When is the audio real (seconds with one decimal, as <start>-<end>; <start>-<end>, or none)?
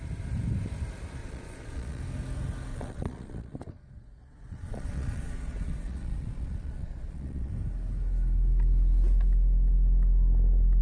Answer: 0.0-1.2; 2.0-2.7; 7.5-10.8